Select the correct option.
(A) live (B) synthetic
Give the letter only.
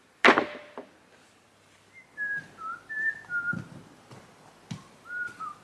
A